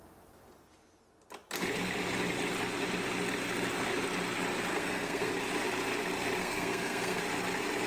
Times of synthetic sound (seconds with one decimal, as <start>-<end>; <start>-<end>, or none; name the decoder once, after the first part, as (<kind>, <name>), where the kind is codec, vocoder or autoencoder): 4.7-5.3 (codec, SNAC); 6.4-7.2